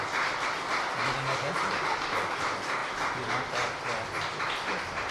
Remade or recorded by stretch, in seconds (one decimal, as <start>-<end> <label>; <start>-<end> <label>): 0.0-5.1 recorded